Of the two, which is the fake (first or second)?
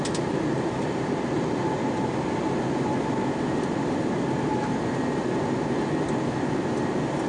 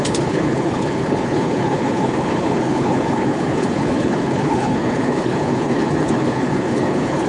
second